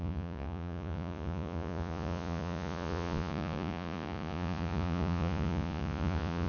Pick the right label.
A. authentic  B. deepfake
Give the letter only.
B